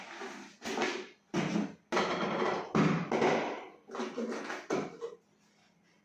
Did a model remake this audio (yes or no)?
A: no